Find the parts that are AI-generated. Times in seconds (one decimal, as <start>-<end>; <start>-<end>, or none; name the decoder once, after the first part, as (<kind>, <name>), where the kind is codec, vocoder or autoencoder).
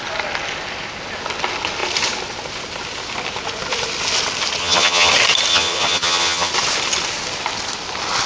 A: 4.6-5.1 (vocoder, HiFi-GAN); 5.5-6.5